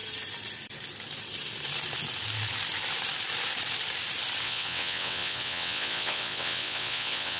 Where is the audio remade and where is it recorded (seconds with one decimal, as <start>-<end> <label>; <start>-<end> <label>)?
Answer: 0.0-4.4 recorded; 4.4-7.4 remade